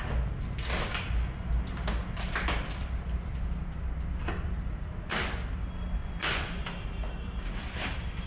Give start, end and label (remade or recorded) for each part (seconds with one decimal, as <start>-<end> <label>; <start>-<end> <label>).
0.0-6.0 recorded; 6.0-6.6 remade; 6.6-8.3 recorded